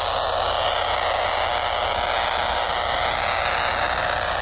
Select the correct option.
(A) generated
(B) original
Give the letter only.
B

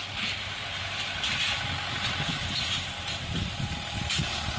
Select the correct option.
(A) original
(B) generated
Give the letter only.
A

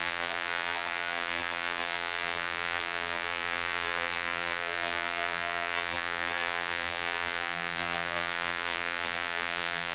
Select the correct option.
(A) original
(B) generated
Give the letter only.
B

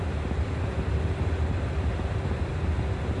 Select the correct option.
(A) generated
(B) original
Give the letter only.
B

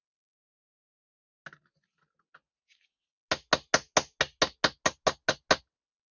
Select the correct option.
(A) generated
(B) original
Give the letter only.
B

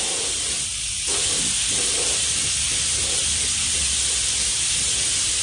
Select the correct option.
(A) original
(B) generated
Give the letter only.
A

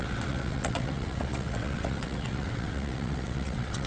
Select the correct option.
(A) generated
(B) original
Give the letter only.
A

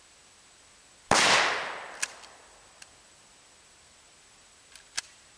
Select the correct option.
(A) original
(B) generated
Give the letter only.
A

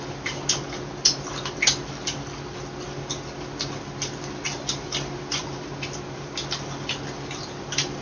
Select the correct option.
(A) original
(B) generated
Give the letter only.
A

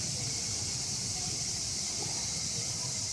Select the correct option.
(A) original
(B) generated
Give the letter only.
B